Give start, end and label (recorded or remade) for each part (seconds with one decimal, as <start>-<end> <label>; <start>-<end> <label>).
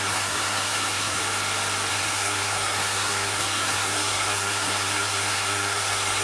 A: 0.0-1.2 remade; 1.2-1.9 recorded; 1.9-6.2 remade